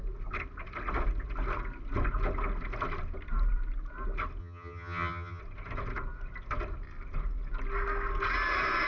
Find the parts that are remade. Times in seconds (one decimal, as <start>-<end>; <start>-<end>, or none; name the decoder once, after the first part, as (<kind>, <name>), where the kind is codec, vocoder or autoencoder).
4.4-5.4 (vocoder, HiFi-GAN)

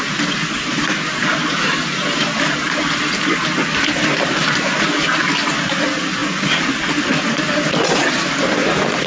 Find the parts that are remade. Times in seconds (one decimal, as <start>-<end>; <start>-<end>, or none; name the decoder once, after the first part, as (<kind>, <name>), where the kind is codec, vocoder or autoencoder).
none